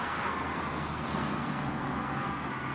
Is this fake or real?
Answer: fake